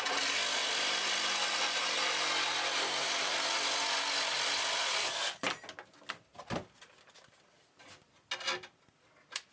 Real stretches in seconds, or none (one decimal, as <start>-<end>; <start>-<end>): 0.0-9.5